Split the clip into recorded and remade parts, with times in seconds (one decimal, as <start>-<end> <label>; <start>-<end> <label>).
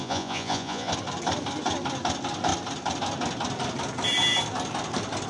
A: 0.0-0.9 remade; 0.9-5.3 recorded